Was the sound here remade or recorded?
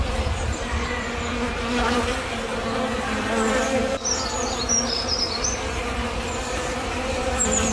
recorded